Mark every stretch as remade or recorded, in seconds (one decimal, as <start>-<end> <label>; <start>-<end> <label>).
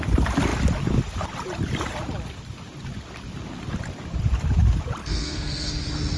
0.0-5.0 recorded; 5.0-5.7 remade; 5.7-6.2 recorded